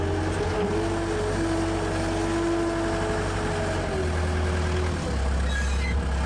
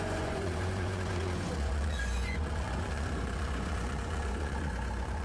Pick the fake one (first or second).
second